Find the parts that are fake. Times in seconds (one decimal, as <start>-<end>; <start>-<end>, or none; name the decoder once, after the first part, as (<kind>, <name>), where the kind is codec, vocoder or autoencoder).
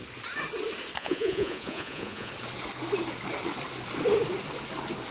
1.0-2.3 (vocoder, Vocos)